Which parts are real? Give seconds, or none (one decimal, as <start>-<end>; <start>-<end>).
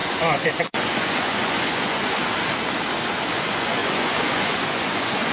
2.2-3.3